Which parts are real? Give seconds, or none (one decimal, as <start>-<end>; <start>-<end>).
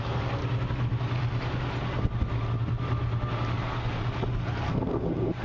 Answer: 0.4-3.6; 4.0-4.7